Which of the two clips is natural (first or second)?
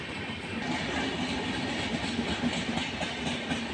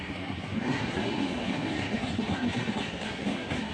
first